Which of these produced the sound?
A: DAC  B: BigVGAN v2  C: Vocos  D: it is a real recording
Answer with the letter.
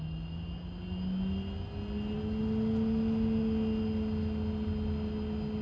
D